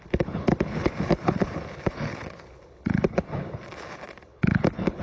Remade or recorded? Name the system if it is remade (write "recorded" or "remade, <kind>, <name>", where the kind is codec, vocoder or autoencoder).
remade, codec, HILCodec